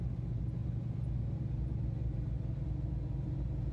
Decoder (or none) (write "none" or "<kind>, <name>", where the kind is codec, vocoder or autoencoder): none